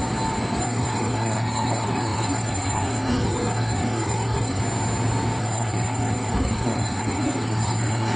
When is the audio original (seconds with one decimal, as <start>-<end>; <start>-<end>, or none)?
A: 0.0-0.6; 4.6-5.4